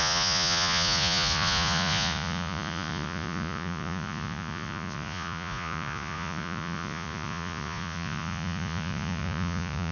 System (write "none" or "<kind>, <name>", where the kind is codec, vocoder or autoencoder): vocoder, Vocos